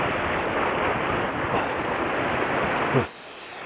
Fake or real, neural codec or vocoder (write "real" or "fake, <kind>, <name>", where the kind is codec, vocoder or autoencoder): real